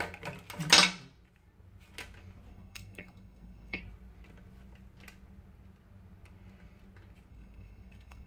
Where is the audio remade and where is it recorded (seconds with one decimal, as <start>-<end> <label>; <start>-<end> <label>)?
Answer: 0.0-2.5 recorded; 2.5-3.8 remade; 3.8-7.3 recorded; 7.3-8.3 remade